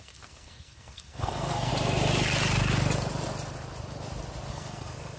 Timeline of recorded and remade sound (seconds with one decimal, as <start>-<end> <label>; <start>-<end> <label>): 0.0-1.7 remade; 1.7-4.5 recorded; 4.5-5.2 remade